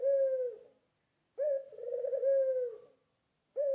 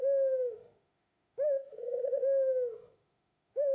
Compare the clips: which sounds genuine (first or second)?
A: first